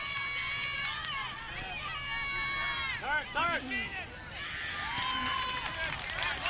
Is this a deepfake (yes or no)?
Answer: no